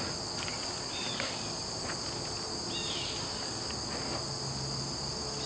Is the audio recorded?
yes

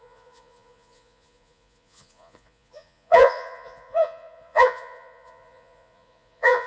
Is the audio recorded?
no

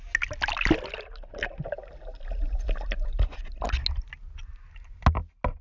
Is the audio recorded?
yes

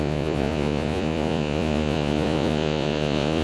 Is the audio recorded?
no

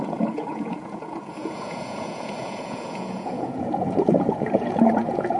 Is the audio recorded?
no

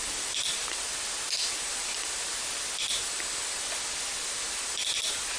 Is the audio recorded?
yes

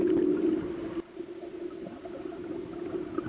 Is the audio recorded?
yes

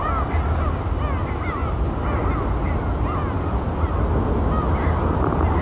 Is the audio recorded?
yes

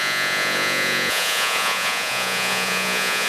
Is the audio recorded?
no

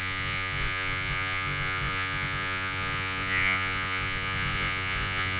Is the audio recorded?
no